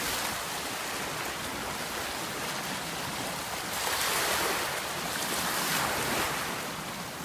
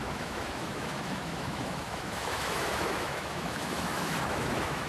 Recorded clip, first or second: first